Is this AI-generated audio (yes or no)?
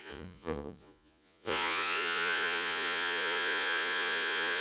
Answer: yes